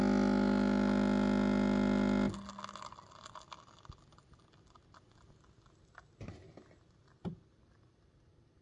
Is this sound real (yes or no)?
yes